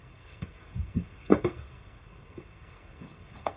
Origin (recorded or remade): remade